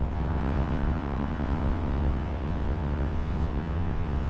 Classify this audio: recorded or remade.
remade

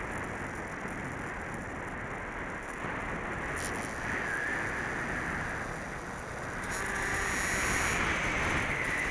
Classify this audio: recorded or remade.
recorded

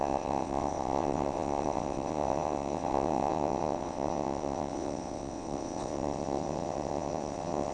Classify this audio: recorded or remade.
remade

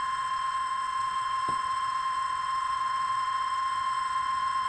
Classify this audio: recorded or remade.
remade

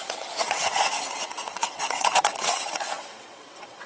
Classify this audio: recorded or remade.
remade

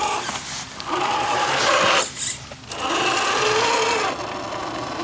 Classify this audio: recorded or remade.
recorded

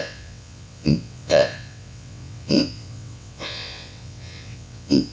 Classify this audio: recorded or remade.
remade